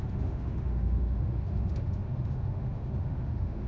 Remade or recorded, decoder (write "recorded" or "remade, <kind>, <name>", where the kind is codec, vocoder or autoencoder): remade, autoencoder, DAC-VAE